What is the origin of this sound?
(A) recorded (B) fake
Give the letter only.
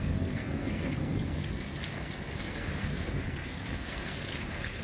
B